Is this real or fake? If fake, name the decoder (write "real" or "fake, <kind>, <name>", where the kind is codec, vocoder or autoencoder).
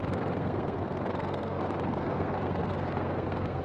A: fake, codec, SNAC